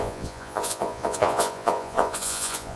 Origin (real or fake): fake